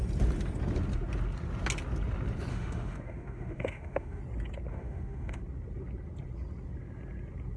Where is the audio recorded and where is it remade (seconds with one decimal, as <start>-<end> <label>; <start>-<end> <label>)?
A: 0.0-2.5 recorded; 2.5-4.2 remade; 4.2-4.7 recorded; 4.7-5.4 remade; 5.4-7.6 recorded